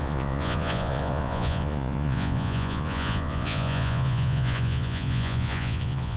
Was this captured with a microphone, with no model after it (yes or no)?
no